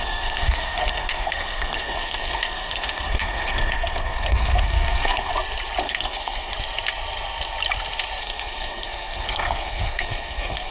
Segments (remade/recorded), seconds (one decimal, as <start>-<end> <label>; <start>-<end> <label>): 0.0-5.3 remade; 5.3-5.8 recorded; 5.8-6.5 remade; 6.5-8.2 recorded; 8.2-10.7 remade

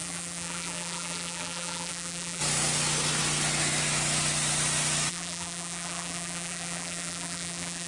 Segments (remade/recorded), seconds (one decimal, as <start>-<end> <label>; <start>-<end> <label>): 0.0-2.4 remade; 2.4-5.1 recorded; 5.1-7.9 remade

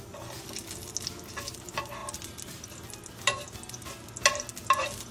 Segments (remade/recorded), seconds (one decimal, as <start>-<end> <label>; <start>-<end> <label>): 0.0-5.1 recorded

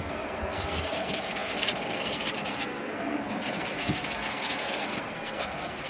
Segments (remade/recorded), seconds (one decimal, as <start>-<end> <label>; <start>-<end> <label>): 0.0-5.9 remade

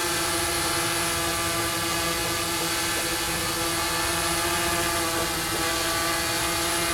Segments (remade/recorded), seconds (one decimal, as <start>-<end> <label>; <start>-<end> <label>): 0.0-0.7 remade; 0.7-6.9 recorded

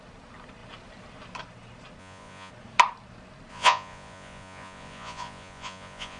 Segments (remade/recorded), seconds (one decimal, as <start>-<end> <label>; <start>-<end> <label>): 0.0-2.0 recorded; 2.0-2.5 remade; 2.5-3.5 recorded; 3.5-6.2 remade

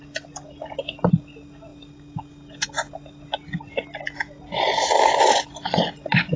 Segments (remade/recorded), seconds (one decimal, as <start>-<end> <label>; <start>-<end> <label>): 0.0-6.4 recorded